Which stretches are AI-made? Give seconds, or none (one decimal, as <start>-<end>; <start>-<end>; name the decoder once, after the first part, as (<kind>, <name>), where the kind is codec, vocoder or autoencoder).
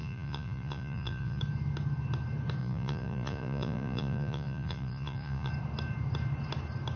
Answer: 0.0-1.4 (vocoder, Vocos); 2.6-5.5